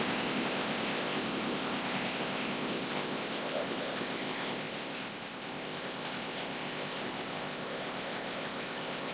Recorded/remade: remade